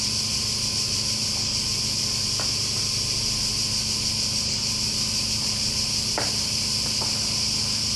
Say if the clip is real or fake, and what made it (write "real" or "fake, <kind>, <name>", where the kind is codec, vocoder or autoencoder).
real